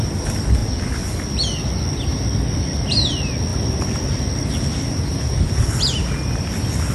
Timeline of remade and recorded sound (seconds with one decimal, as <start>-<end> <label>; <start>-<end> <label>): 0.0-6.9 recorded